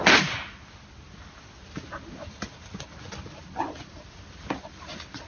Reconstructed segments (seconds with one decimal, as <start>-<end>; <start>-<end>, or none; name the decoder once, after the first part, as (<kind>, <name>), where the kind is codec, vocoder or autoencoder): none